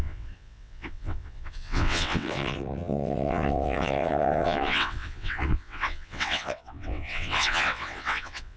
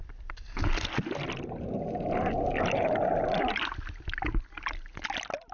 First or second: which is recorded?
second